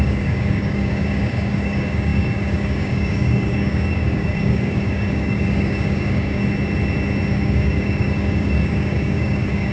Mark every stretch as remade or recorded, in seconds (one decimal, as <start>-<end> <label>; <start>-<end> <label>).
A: 0.0-6.4 remade; 6.4-7.3 recorded; 7.3-9.7 remade